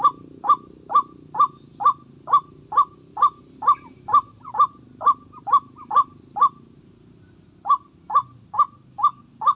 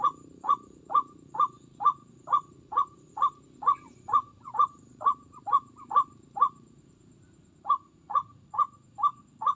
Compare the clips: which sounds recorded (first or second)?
first